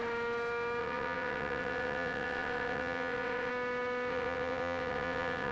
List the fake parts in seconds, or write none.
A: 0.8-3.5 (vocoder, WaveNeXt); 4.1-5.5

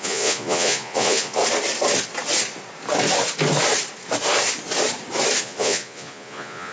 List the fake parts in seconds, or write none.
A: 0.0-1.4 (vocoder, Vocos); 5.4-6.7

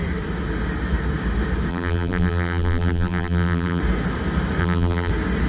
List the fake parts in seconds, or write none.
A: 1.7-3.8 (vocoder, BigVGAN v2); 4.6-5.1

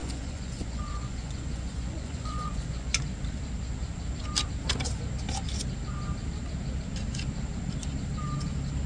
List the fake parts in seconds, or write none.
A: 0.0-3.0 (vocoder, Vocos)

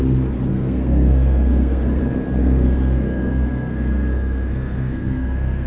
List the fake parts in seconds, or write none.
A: 0.5-2.0 (codec, SNAC); 2.4-5.7

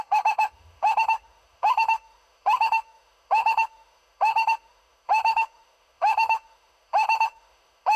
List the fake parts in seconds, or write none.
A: 0.0-8.0 (autoencoder, DAC-VAE)

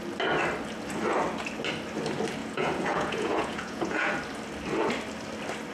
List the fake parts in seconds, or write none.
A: 2.4-4.1 (vocoder, Vocos)

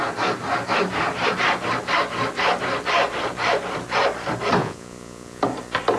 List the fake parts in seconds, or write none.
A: 4.6-5.4 (vocoder, Vocos)